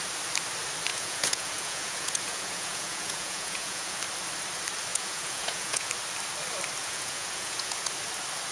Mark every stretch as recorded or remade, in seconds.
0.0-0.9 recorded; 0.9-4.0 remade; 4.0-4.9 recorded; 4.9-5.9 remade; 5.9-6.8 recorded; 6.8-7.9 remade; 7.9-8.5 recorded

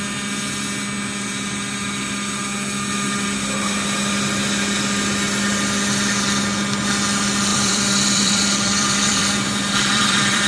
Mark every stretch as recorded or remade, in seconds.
0.0-7.5 recorded; 7.5-10.5 remade

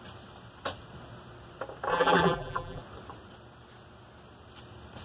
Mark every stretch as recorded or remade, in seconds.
0.0-1.9 recorded; 1.9-2.8 remade; 2.8-5.0 recorded

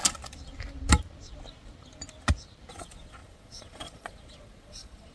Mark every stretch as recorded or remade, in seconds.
0.0-2.7 recorded; 2.7-5.1 remade

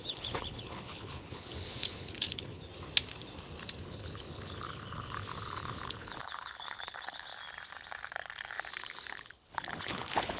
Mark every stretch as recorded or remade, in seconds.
0.0-2.7 remade; 2.7-3.8 recorded; 3.8-7.3 remade; 7.3-8.8 recorded; 8.8-10.4 remade